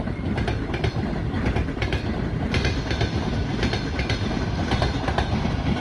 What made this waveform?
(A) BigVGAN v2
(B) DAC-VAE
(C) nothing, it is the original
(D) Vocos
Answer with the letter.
C